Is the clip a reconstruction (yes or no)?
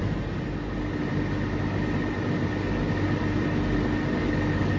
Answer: no